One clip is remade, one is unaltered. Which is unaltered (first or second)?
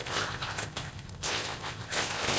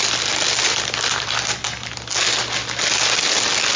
second